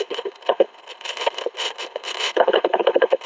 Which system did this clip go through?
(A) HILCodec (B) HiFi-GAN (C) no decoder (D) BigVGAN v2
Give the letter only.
A